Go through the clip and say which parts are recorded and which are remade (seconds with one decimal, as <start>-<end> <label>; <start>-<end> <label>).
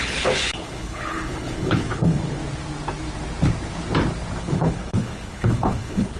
0.0-2.4 remade; 2.4-4.4 recorded; 4.4-6.2 remade